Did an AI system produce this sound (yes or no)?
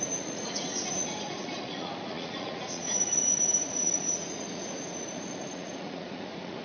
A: yes